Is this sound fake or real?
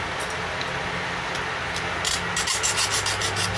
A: real